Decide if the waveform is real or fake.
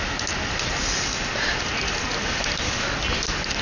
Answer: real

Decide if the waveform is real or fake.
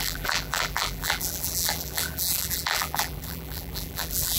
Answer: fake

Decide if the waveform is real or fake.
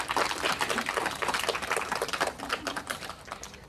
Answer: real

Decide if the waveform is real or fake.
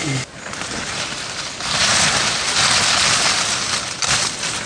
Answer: real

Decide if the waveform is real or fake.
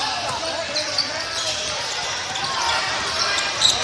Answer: fake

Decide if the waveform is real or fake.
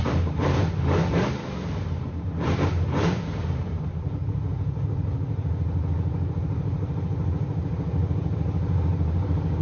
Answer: fake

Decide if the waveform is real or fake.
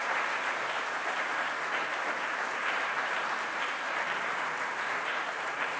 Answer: fake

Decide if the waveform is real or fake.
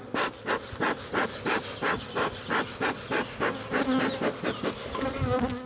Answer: real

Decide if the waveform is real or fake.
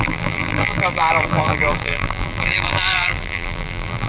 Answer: fake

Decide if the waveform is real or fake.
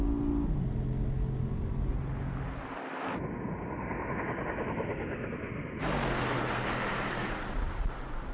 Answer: real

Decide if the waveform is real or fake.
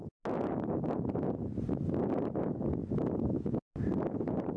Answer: real